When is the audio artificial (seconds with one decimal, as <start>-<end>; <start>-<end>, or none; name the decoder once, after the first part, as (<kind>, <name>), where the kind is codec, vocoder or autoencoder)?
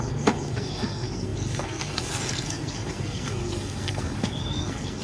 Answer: 0.0-5.0 (codec, SNAC)